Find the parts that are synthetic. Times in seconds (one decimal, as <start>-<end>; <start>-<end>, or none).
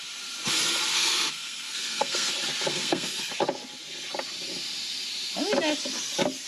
0.9-2.3; 2.7-3.3